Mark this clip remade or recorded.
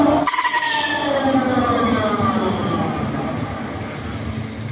recorded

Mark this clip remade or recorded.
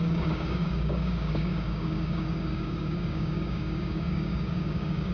remade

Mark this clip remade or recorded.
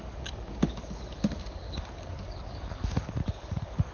remade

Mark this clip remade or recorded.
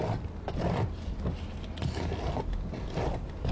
recorded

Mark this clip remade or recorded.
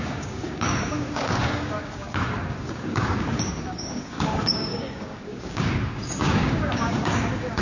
remade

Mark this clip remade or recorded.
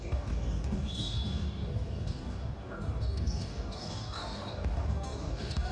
remade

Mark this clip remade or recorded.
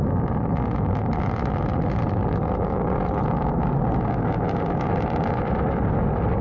recorded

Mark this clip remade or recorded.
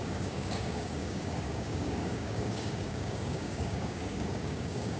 remade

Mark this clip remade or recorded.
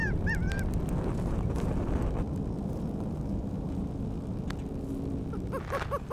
recorded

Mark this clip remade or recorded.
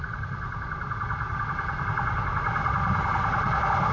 recorded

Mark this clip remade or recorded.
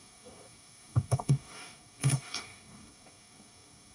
remade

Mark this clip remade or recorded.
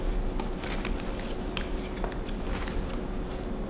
recorded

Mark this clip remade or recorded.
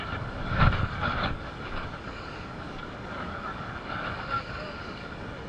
remade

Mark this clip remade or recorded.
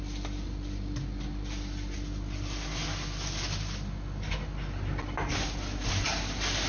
recorded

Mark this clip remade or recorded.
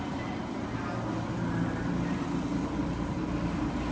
recorded